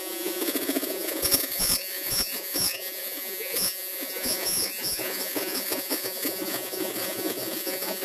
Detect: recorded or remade remade